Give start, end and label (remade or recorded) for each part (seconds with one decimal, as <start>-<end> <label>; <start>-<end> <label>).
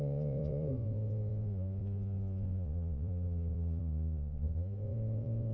0.0-5.5 remade